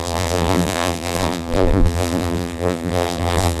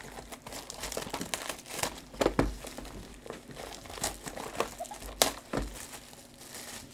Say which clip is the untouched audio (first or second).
second